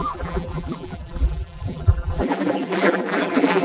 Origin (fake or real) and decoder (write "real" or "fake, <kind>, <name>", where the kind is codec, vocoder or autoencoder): fake, vocoder, BigVGAN v2